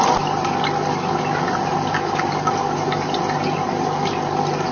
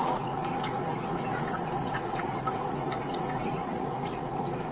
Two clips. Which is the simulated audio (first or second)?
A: second